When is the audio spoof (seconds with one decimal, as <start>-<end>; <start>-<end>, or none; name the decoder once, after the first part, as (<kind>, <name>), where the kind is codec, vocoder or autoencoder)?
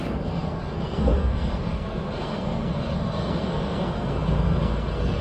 0.0-5.2 (codec, SNAC)